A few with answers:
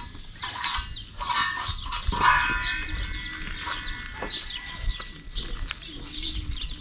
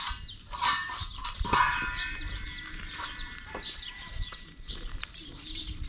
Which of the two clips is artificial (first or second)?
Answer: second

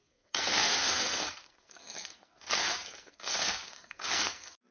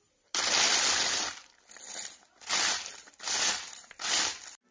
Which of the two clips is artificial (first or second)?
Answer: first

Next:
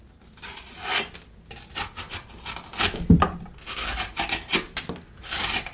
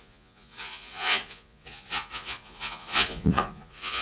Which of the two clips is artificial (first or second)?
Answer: second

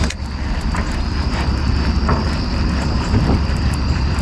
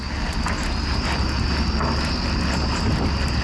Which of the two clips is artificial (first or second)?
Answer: first